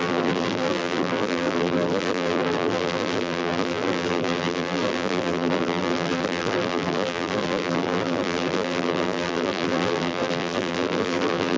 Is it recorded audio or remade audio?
remade